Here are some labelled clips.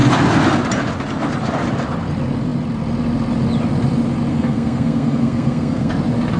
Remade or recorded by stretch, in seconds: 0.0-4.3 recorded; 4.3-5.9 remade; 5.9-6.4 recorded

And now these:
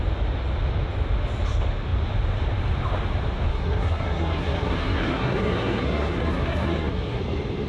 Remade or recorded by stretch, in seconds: 0.0-3.5 recorded; 3.5-7.2 remade; 7.2-7.7 recorded